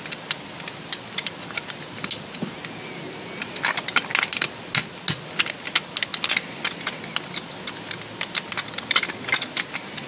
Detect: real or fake real